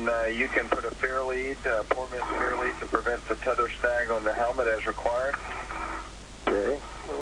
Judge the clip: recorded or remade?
recorded